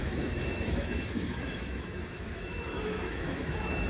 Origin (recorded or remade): remade